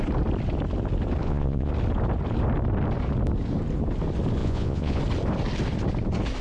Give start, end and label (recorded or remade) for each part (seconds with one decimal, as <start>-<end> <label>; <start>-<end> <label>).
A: 0.0-1.2 recorded; 1.2-1.7 remade; 1.7-4.4 recorded; 4.4-5.0 remade; 5.0-6.4 recorded